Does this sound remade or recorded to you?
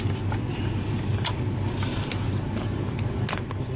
recorded